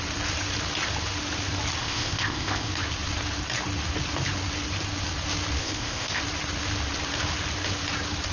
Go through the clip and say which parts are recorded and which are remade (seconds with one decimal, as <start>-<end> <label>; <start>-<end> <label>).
0.0-1.8 recorded; 1.8-2.7 remade; 2.7-5.6 recorded; 5.6-6.2 remade; 6.2-8.3 recorded